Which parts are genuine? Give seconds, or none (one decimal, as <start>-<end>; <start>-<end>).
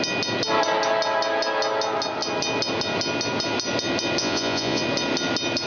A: 0.0-4.2; 4.8-5.7